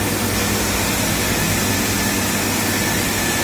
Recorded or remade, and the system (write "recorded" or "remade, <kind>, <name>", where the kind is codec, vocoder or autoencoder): recorded